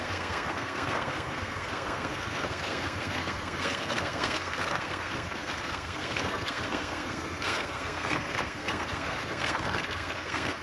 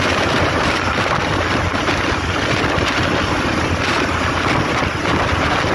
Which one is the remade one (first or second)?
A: first